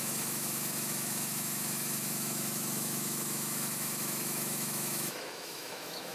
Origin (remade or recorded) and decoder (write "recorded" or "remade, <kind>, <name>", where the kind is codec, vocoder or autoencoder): remade, autoencoder, DAC-VAE